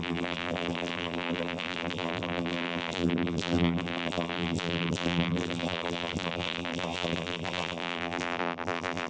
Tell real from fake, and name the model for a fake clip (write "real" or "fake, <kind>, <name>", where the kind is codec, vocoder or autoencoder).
fake, vocoder, BigVGAN v2